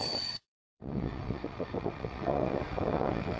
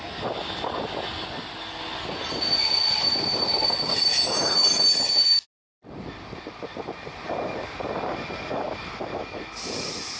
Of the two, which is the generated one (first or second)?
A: first